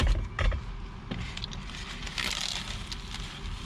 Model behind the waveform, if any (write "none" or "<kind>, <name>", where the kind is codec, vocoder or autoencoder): none